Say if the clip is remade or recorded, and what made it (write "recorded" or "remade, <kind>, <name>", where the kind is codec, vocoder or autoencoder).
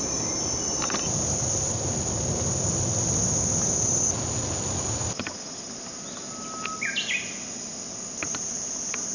recorded